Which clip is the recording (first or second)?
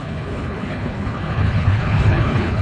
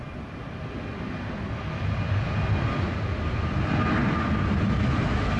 second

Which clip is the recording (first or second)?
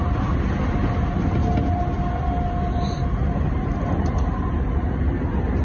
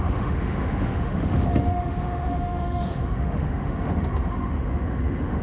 first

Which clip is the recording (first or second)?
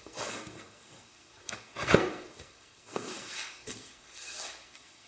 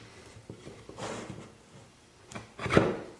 second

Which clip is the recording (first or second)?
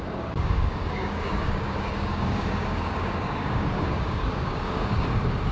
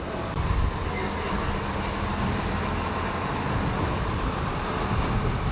second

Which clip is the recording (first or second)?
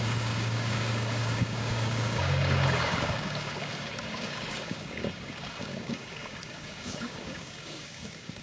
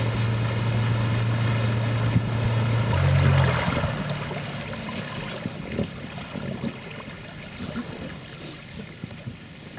second